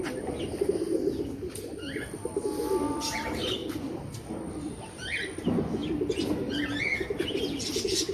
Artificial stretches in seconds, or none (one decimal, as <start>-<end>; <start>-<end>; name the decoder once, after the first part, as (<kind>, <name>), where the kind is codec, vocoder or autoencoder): none